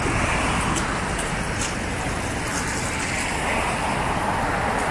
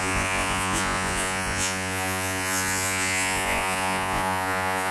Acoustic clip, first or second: first